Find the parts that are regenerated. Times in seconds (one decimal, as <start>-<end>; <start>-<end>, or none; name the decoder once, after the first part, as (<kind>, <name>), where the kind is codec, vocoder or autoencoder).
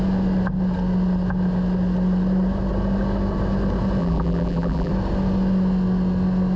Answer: 4.0-4.9 (vocoder, BigVGAN v2)